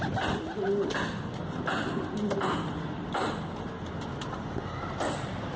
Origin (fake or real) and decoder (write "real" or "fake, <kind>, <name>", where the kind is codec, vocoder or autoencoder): real